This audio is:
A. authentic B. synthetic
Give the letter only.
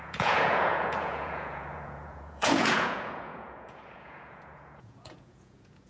B